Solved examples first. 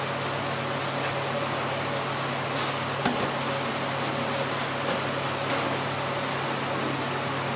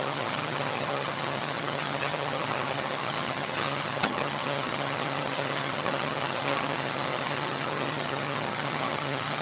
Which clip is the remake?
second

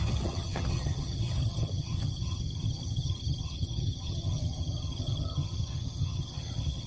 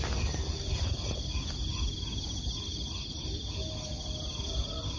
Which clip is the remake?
first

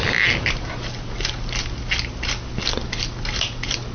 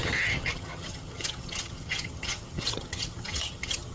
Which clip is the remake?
second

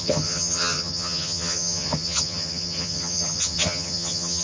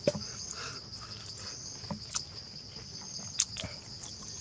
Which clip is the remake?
first